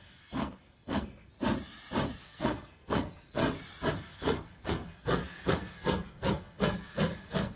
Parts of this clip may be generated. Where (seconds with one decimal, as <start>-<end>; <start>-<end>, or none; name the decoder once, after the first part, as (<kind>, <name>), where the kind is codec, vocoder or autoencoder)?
0.0-1.3 (codec, SNAC); 2.2-3.4; 3.9-7.5